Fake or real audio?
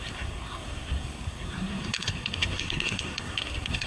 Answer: fake